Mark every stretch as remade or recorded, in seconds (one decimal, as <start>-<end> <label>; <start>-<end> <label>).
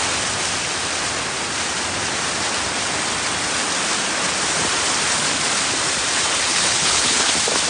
0.0-6.5 recorded; 6.5-7.3 remade; 7.3-7.7 recorded